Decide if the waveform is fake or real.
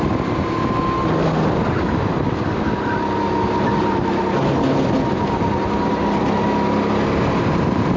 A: real